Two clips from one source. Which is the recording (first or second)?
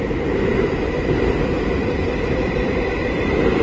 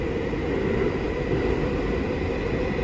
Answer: second